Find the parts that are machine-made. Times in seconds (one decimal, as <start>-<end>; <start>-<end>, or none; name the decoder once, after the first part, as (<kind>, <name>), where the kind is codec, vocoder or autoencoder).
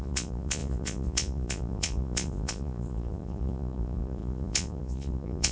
0.0-5.5 (vocoder, Vocos)